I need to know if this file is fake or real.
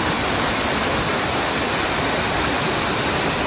real